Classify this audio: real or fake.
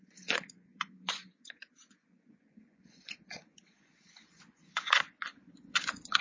fake